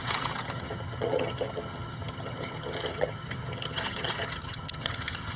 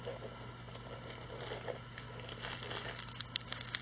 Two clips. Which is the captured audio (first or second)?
second